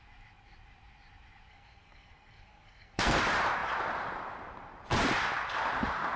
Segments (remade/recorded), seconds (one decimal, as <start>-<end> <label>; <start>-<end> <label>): 0.0-1.5 recorded; 1.5-3.2 remade; 3.2-6.2 recorded